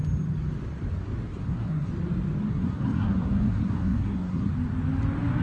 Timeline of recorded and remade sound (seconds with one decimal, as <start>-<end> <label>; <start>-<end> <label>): 0.0-1.4 recorded; 1.4-1.9 remade; 1.9-2.5 recorded; 2.5-4.5 remade; 4.5-5.4 recorded